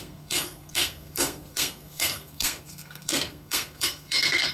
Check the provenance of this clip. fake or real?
fake